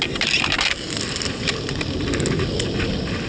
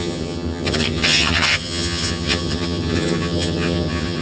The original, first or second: first